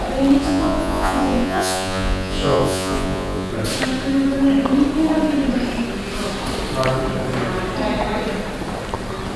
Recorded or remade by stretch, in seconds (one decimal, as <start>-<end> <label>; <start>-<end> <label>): 0.0-0.4 recorded; 0.4-3.5 remade; 3.5-9.4 recorded